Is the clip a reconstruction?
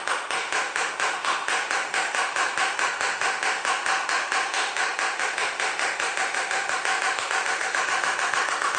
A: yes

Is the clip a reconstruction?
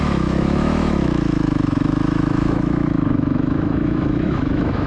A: yes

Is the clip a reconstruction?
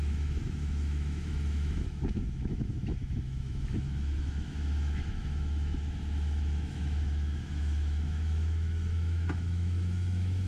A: yes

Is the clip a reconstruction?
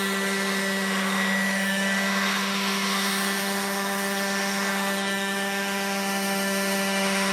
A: yes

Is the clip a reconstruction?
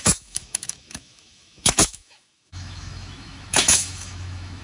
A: yes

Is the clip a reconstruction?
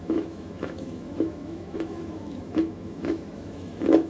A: yes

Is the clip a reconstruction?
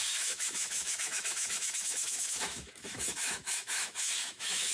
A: yes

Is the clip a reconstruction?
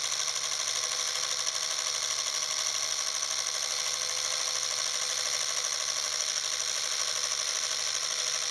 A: no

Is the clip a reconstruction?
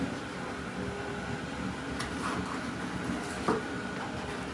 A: no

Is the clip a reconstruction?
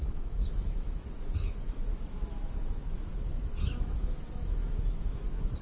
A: yes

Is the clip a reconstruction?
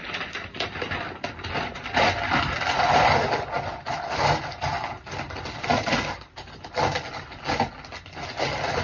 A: no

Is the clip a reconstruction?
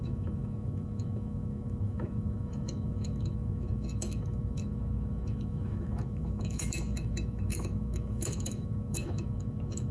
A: yes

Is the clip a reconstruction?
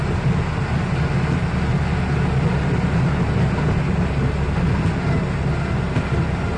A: no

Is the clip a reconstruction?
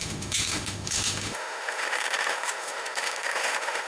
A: yes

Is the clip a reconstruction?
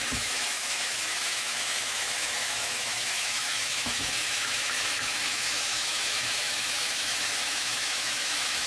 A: yes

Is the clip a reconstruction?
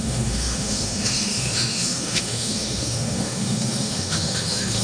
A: yes